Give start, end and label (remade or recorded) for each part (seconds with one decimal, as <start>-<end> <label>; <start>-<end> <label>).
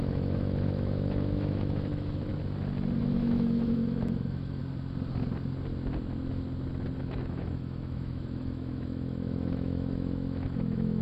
0.0-2.3 remade; 2.3-3.0 recorded; 3.0-4.6 remade; 4.6-7.0 recorded; 7.0-11.0 remade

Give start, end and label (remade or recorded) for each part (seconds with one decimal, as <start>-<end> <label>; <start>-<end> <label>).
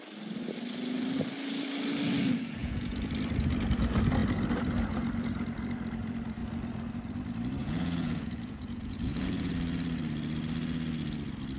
0.0-2.6 recorded; 2.6-3.1 remade; 3.1-7.6 recorded; 7.6-9.5 remade; 9.5-11.6 recorded